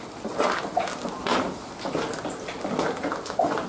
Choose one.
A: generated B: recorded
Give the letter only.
B